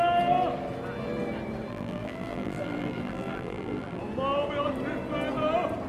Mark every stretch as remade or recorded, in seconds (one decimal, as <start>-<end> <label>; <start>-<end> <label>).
0.0-1.7 recorded; 1.7-4.0 remade; 4.0-5.9 recorded